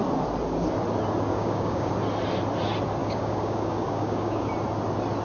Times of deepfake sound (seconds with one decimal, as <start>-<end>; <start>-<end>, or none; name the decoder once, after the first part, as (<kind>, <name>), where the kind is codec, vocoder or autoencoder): 1.3-1.9 (codec, DAC); 3.0-4.5